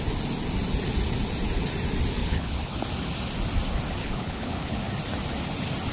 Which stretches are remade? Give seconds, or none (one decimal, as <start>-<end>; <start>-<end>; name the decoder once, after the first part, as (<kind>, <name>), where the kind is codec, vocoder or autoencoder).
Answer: 2.2-2.8 (codec, HILCodec); 4.0-4.8